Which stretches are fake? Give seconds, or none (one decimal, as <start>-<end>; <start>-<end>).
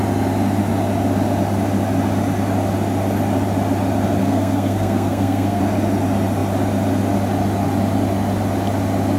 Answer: 4.2-5.6